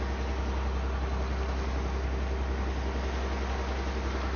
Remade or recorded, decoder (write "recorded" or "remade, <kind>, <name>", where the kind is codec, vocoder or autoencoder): recorded